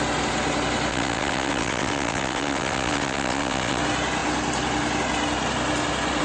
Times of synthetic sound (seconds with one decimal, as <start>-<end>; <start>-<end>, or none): 0.9-3.8